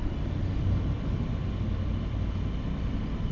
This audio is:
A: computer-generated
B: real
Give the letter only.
B